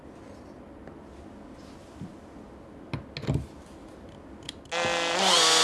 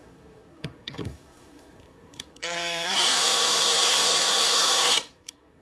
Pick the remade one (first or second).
second